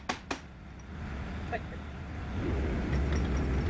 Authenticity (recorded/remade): recorded